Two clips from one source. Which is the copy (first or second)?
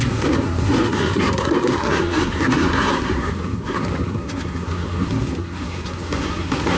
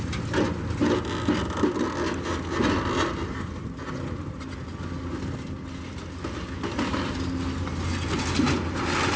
first